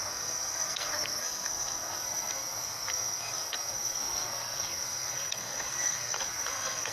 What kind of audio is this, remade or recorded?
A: remade